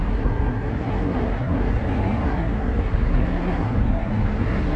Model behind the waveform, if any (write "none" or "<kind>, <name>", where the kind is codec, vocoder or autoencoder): codec, SNAC